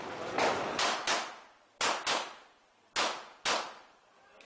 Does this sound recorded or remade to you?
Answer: recorded